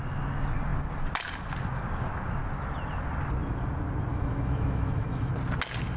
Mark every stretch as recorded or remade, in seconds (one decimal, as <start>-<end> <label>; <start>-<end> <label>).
0.0-4.1 recorded; 4.1-5.3 remade; 5.3-6.0 recorded